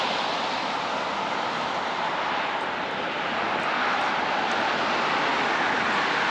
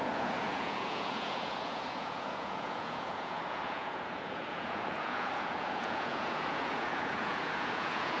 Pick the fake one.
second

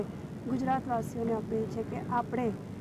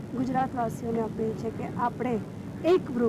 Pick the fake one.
second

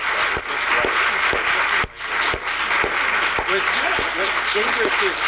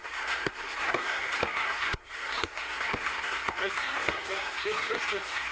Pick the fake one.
second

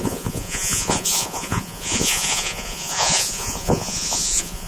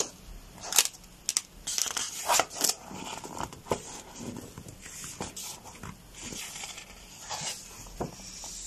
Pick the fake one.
first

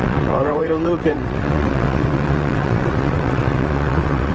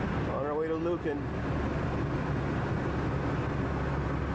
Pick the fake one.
first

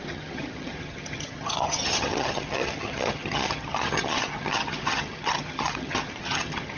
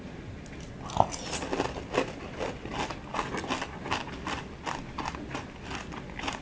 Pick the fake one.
first